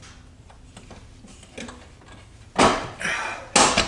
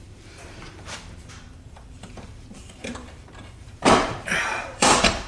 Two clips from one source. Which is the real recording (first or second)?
first